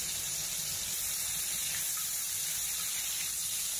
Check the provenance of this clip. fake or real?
real